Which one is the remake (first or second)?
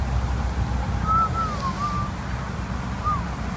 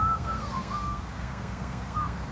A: second